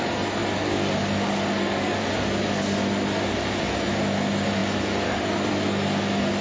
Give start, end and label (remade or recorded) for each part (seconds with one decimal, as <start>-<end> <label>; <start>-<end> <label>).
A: 0.0-6.4 recorded